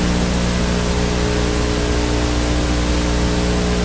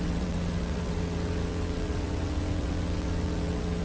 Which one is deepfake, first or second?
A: second